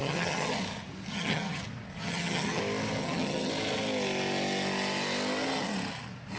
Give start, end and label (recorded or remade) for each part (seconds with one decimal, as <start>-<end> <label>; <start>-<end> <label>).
0.0-0.6 remade; 0.6-1.1 recorded; 1.1-1.6 remade; 1.6-2.0 recorded; 2.0-2.6 remade; 2.6-3.0 recorded; 3.0-3.5 remade; 3.5-6.4 recorded